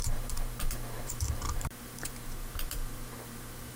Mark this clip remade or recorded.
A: remade